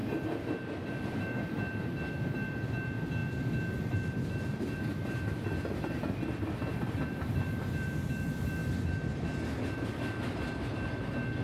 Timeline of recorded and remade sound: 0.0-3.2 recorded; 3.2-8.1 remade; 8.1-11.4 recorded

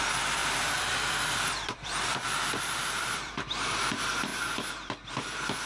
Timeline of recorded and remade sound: 0.0-0.4 recorded; 0.4-3.3 remade; 3.3-5.7 recorded

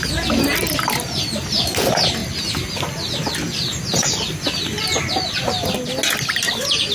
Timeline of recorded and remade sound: 0.0-1.2 recorded; 1.2-2.2 remade; 2.2-6.3 recorded; 6.3-6.9 remade

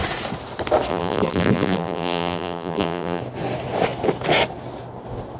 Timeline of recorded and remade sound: 0.0-0.9 recorded; 0.9-3.2 remade; 3.2-5.4 recorded

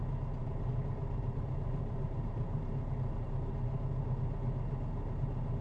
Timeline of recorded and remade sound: 0.0-0.4 recorded; 0.4-3.8 remade; 3.8-5.6 recorded